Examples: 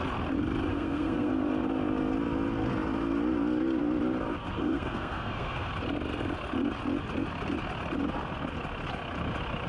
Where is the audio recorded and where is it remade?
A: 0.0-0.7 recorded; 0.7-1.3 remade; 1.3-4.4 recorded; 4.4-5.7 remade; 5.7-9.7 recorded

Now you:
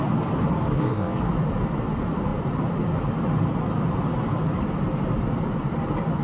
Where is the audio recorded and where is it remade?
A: 0.0-0.7 recorded; 0.7-1.2 remade; 1.2-6.2 recorded

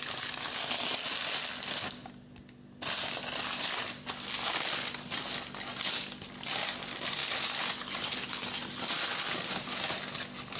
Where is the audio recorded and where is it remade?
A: 0.0-10.6 recorded

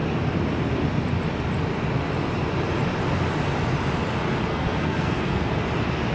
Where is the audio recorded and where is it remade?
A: 0.0-4.5 recorded; 4.5-5.5 remade; 5.5-6.1 recorded

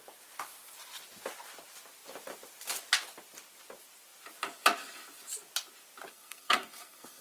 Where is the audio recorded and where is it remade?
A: 0.0-6.1 recorded; 6.1-7.2 remade

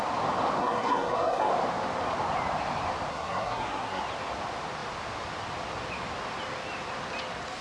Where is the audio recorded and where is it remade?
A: 0.0-0.6 recorded; 0.6-1.5 remade; 1.5-3.1 recorded; 3.1-4.0 remade; 4.0-7.6 recorded

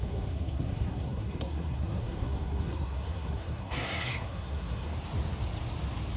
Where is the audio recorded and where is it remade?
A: 0.0-4.9 remade; 4.9-6.2 recorded

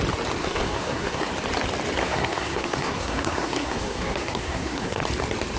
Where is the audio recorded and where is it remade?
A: 0.0-0.4 recorded; 0.4-1.3 remade; 1.3-2.0 recorded; 2.0-5.0 remade; 5.0-5.6 recorded